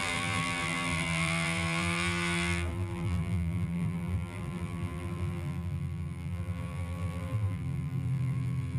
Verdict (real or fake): fake